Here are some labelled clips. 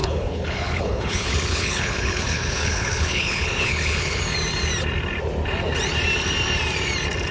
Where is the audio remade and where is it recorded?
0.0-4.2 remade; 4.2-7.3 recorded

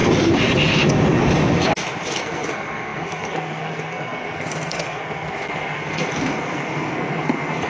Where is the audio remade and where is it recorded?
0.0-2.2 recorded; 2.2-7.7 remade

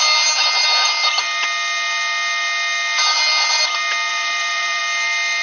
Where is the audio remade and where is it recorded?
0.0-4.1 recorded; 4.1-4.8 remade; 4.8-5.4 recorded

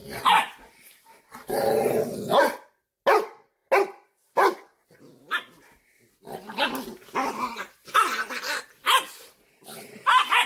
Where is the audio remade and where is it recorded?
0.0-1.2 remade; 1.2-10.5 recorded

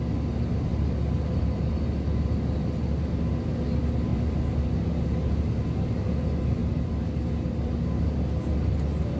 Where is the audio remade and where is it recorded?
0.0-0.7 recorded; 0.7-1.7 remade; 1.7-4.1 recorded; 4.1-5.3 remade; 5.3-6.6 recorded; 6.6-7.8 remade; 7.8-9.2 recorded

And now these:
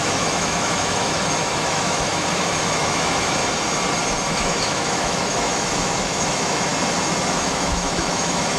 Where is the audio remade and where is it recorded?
0.0-3.4 remade; 3.4-4.3 recorded; 4.3-6.7 remade; 6.7-7.3 recorded; 7.3-8.6 remade